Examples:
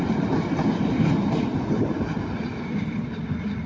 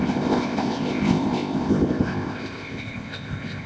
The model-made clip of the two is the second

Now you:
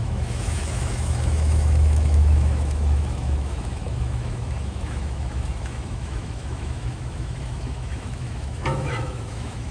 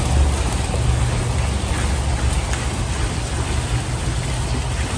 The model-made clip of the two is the first